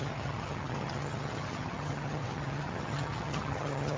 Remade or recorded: remade